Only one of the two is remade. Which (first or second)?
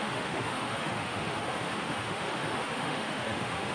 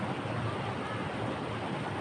first